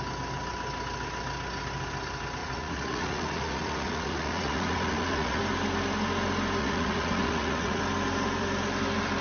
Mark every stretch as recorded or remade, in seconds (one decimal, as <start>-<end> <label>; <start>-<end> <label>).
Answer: 0.0-2.4 recorded; 2.4-5.4 remade; 5.4-6.6 recorded; 6.6-7.8 remade; 7.8-9.2 recorded